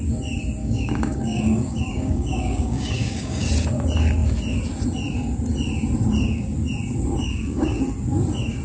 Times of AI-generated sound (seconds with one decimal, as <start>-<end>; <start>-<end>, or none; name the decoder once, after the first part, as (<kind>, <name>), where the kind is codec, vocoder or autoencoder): 0.6-3.5 (codec, DAC); 7.2-7.8